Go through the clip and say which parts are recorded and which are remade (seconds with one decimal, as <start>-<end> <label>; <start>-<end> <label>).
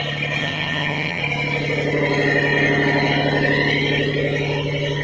0.0-0.4 recorded; 0.4-1.2 remade; 1.2-5.0 recorded